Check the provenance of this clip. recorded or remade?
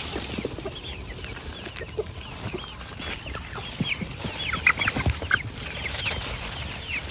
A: recorded